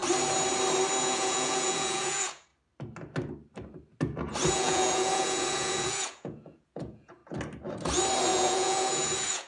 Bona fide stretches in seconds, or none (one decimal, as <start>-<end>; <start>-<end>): 0.0-1.0; 2.5-4.5; 7.2-8.3